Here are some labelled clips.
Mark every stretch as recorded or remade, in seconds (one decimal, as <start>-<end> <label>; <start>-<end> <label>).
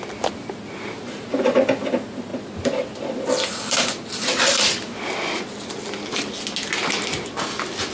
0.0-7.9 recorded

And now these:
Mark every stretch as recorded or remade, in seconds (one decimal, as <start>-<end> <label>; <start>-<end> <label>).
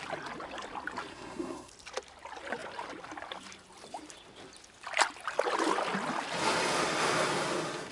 0.0-1.1 recorded; 1.1-1.7 remade; 1.7-7.9 recorded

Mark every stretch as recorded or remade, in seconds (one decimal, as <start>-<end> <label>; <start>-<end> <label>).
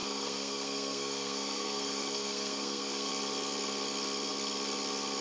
0.0-3.1 remade; 3.1-5.2 recorded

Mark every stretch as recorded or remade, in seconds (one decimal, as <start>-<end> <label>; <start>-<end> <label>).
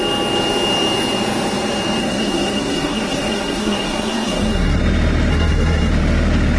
0.0-2.0 recorded; 2.0-4.8 remade; 4.8-5.3 recorded; 5.3-5.9 remade; 5.9-6.6 recorded